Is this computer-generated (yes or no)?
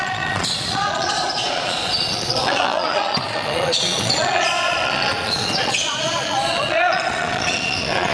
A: yes